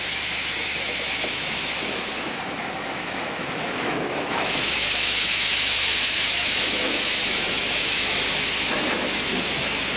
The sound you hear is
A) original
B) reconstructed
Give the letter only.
B